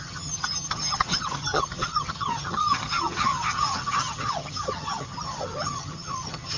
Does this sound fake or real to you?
fake